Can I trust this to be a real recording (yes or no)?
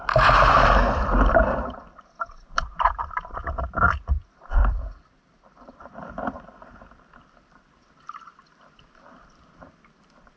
no